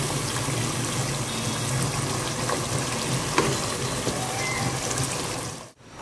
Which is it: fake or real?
real